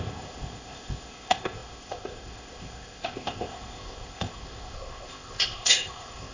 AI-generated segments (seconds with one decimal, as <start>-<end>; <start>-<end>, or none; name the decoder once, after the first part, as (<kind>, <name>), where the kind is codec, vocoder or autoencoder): 0.0-6.3 (codec, ZipCodec)